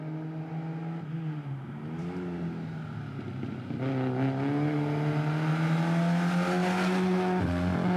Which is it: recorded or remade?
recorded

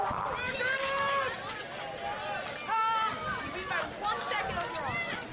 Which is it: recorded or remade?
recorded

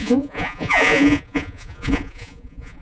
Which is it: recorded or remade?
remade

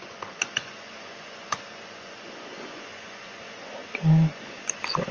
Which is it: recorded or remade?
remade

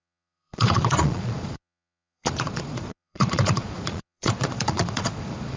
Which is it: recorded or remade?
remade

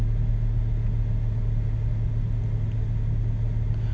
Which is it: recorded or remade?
recorded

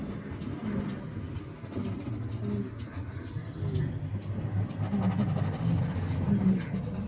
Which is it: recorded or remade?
recorded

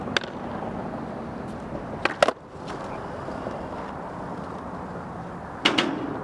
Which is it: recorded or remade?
recorded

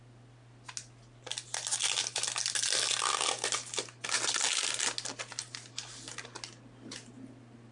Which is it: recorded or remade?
recorded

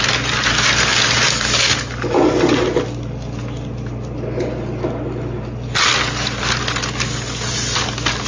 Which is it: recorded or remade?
recorded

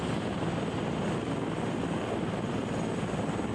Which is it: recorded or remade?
recorded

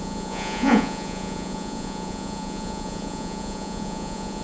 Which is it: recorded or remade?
remade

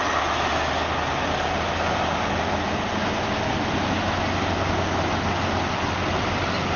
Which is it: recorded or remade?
recorded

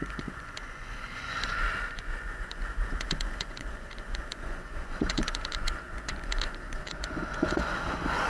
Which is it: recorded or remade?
remade